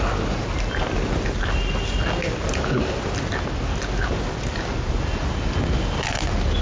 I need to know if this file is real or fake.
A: real